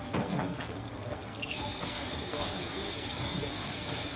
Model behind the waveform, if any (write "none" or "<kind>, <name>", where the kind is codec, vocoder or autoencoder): codec, SNAC